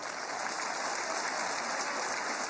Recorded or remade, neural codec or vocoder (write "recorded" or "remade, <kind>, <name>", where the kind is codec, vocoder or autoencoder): recorded